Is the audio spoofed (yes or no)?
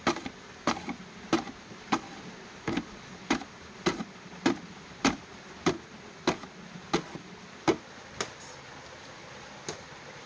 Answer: no